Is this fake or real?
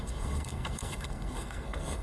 fake